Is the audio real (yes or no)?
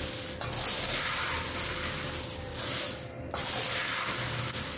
yes